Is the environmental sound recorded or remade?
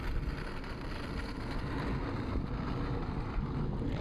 recorded